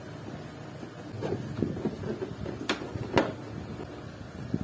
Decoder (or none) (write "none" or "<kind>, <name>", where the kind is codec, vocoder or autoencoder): none